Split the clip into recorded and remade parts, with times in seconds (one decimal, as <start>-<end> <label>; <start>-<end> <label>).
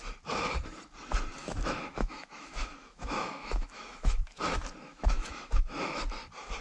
0.0-1.4 recorded; 1.4-4.4 remade; 4.4-4.9 recorded; 4.9-6.0 remade; 6.0-6.6 recorded